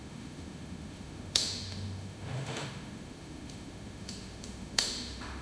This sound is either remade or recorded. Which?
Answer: remade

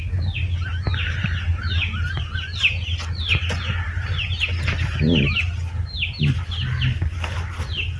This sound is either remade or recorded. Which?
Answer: recorded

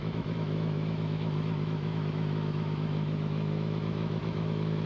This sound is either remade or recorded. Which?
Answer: remade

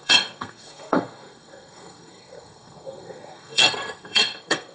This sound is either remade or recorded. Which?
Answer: remade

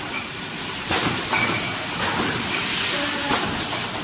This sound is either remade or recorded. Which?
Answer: recorded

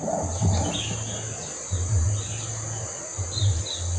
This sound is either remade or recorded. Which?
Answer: recorded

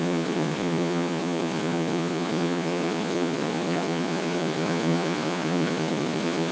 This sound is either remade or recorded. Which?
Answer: remade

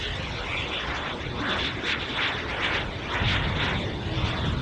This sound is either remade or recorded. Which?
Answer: recorded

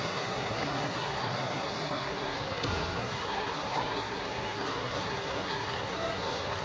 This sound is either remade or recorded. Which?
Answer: remade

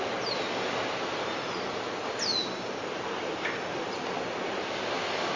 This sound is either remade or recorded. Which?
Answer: recorded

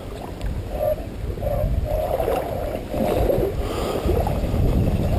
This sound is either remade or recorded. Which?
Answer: recorded